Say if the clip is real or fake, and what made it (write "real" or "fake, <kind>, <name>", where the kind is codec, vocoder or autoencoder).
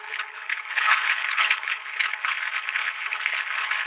fake, codec, HILCodec